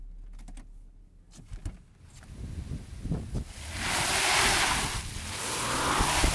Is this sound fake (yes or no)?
no